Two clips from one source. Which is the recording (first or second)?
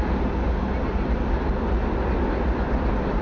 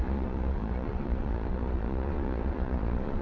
first